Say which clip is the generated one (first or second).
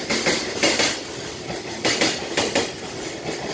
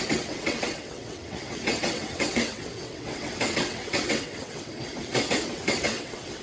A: second